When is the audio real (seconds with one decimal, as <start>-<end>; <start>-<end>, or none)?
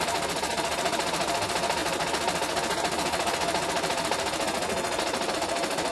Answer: 0.0-5.9